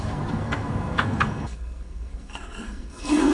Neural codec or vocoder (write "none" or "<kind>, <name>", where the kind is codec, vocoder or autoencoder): codec, SNAC